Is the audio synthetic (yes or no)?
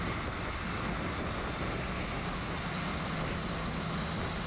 no